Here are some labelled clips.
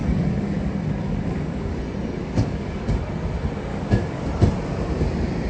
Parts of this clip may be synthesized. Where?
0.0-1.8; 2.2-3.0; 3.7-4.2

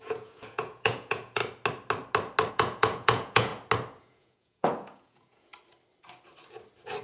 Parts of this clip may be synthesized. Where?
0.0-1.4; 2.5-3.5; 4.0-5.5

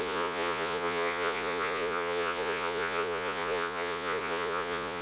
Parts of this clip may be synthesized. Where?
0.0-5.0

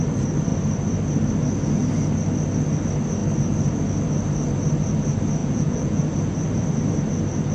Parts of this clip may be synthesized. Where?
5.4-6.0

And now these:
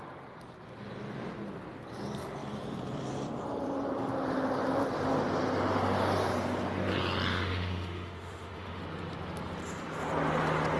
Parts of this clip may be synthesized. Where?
7.3-8.8

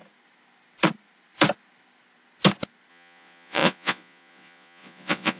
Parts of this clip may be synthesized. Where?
2.9-5.4

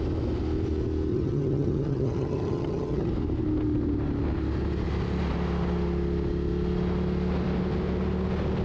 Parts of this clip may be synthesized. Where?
1.1-3.1

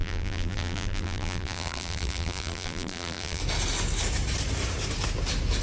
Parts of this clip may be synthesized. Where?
0.0-3.4